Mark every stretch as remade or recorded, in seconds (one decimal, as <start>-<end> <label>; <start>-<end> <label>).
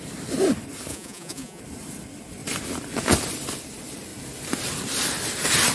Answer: 0.0-0.9 recorded; 0.9-1.6 remade; 1.6-5.7 recorded